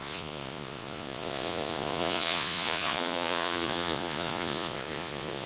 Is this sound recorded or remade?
remade